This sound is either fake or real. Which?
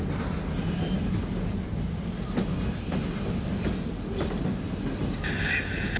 real